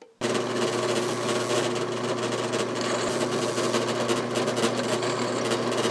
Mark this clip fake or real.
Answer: real